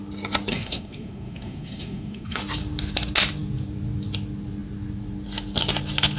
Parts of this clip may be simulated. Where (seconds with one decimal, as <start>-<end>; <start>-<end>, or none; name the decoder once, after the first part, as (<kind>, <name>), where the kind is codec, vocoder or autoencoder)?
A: 0.5-2.4 (codec, SNAC)